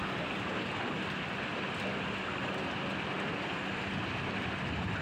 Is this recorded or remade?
recorded